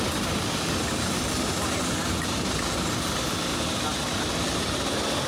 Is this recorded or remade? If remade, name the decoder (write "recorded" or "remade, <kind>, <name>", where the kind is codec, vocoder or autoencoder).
recorded